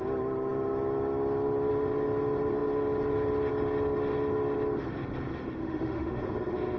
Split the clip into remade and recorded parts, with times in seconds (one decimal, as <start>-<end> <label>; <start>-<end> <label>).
0.0-5.6 recorded; 5.6-6.2 remade; 6.2-6.8 recorded